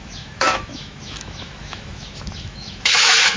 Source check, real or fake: fake